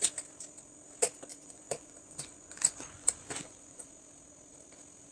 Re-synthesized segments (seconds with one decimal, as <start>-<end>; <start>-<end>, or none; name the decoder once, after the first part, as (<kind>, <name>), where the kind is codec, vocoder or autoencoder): 1.3-3.9 (vocoder, Vocos)